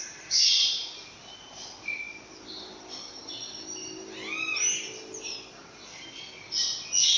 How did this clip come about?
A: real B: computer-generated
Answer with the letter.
A